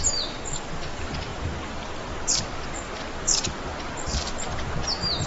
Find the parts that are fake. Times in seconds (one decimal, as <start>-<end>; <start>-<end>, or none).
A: none